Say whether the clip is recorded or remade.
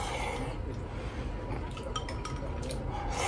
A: recorded